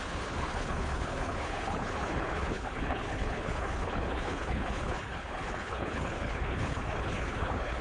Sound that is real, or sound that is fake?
fake